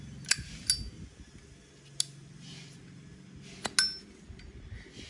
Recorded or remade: recorded